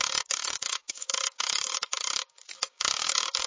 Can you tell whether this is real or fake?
fake